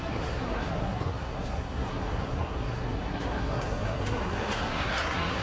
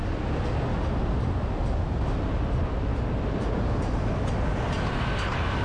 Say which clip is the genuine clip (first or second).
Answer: second